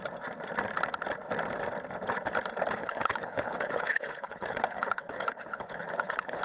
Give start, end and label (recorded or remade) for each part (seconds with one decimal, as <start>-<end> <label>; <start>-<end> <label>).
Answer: 0.0-2.8 recorded; 2.8-6.4 remade